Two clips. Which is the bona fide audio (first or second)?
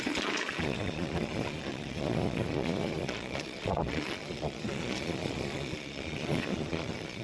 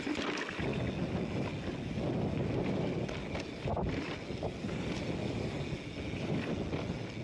second